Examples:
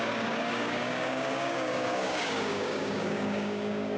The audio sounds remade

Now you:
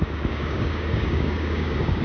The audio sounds remade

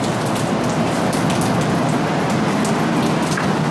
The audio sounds recorded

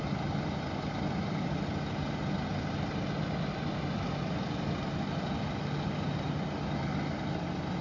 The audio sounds recorded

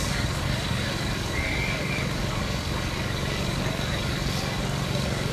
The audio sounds remade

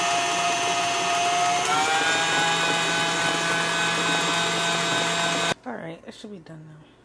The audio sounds recorded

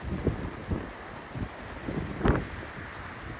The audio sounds recorded